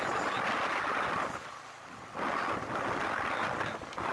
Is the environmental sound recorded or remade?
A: recorded